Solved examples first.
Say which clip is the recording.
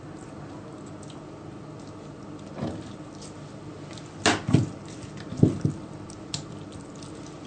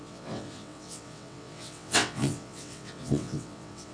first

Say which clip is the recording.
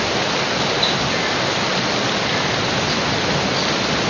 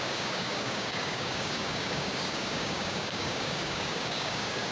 first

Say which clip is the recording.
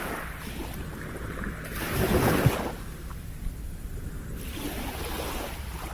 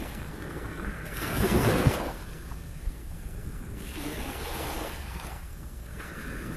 first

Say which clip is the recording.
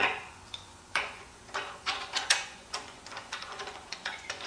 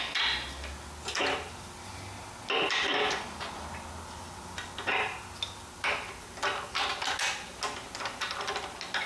second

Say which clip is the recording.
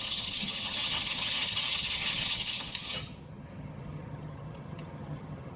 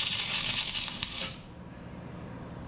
second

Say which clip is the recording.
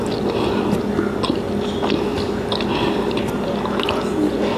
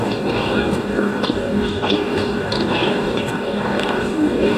first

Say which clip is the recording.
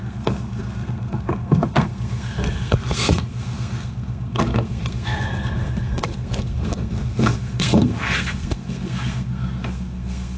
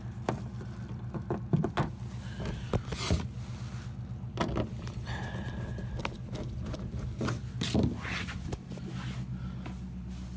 second